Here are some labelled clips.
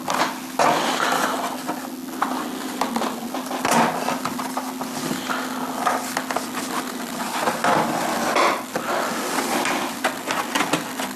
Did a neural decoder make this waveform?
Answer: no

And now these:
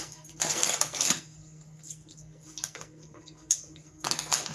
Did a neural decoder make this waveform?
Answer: yes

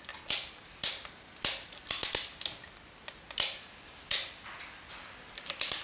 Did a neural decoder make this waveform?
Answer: no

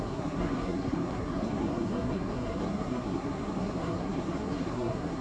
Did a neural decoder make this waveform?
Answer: yes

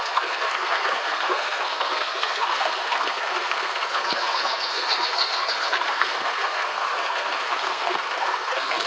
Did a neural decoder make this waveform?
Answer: yes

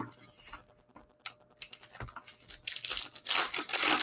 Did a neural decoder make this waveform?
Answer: no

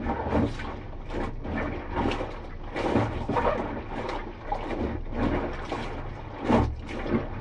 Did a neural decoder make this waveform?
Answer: no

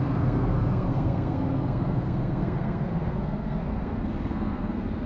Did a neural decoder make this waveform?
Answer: yes